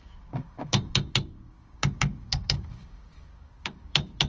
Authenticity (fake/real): fake